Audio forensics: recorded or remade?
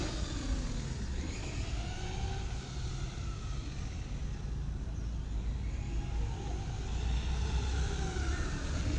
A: recorded